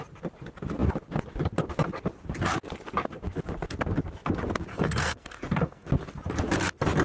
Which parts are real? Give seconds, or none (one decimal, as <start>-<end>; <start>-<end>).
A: 0.0-4.7; 5.9-7.0